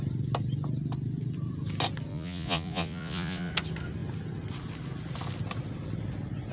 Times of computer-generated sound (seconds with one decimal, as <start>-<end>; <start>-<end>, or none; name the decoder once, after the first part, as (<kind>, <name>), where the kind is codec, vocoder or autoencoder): 2.1-3.5 (vocoder, Vocos)